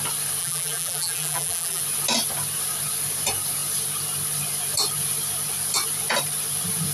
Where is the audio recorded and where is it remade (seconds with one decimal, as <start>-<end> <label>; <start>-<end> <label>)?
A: 0.0-0.4 recorded; 0.4-1.8 remade; 1.8-6.9 recorded